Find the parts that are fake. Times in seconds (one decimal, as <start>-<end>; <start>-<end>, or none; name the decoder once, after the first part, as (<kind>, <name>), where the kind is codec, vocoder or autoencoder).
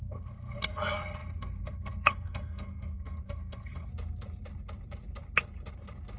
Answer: 0.0-3.9 (codec, SNAC)